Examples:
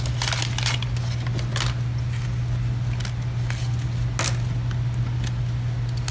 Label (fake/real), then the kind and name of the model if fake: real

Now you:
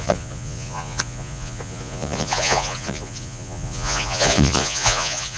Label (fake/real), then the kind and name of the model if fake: fake, vocoder, Vocos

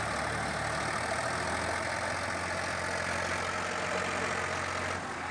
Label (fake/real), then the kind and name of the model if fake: real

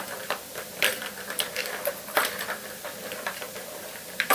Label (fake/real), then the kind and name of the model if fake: fake, vocoder, BigVGAN v2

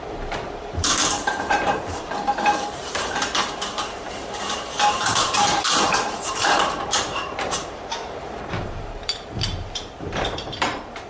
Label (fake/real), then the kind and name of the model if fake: fake, vocoder, BigVGAN v2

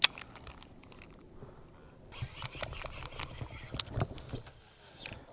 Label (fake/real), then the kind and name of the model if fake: real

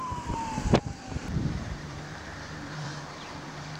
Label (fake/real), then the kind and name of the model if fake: fake, vocoder, BigVGAN v2